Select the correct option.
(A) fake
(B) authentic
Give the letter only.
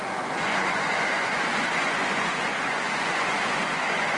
A